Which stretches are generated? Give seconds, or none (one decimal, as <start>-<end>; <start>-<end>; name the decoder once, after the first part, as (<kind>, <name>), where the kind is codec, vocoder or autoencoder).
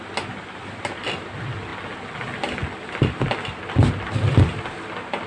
none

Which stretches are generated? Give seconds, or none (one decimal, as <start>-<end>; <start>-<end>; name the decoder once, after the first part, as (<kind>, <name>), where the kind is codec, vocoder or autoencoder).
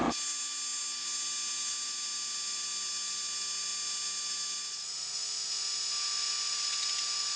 none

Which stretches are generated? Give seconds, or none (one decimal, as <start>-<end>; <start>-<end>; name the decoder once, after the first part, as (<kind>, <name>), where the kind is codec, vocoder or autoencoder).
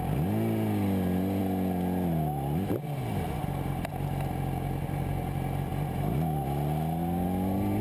none